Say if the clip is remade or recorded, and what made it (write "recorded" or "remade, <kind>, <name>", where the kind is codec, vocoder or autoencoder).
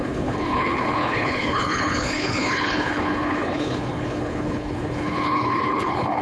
remade, codec, HILCodec